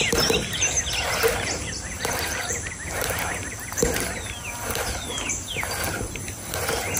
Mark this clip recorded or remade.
recorded